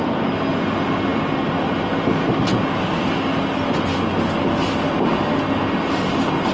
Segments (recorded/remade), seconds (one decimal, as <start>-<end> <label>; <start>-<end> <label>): 0.0-6.5 recorded